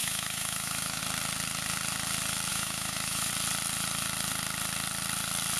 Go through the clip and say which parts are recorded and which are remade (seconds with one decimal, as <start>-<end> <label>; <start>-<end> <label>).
0.0-1.0 remade; 1.0-2.5 recorded; 2.5-3.3 remade; 3.3-5.6 recorded